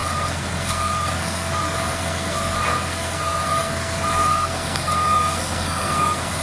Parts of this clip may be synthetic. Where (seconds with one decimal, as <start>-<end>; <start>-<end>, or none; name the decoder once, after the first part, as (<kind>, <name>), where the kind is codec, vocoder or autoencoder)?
0.0-6.4 (codec, SNAC)